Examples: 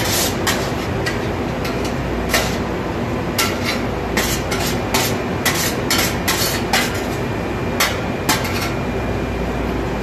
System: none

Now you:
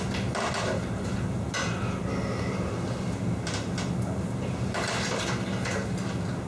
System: none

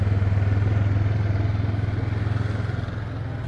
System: none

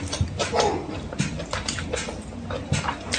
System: none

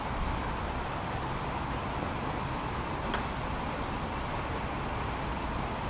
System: none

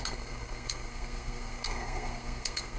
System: codec, SNAC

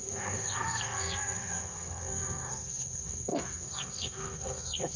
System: codec, SNAC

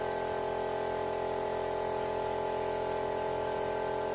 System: none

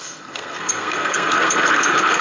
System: codec, SNAC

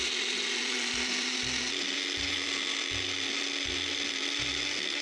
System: none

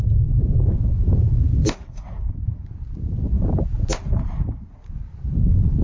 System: none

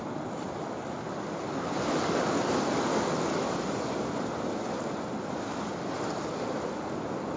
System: none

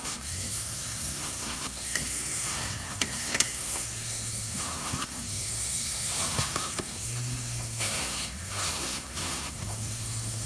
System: codec, SNAC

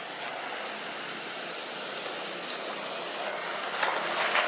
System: none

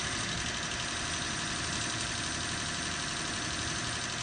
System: none